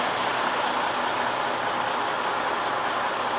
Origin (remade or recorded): recorded